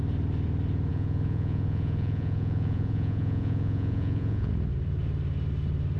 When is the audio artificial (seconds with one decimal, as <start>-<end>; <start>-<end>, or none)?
0.9-4.5